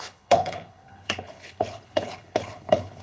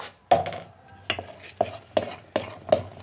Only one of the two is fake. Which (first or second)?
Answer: first